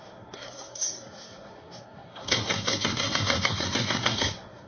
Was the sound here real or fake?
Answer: fake